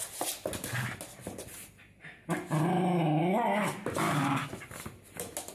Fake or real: real